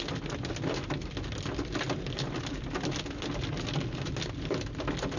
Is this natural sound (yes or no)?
yes